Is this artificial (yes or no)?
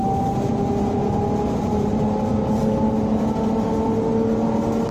no